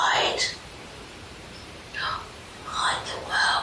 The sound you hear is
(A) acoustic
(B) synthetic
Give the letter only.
B